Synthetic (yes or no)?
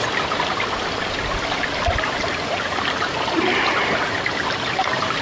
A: no